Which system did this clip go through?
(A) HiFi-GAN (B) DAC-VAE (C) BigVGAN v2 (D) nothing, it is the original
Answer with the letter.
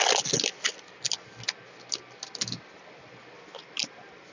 D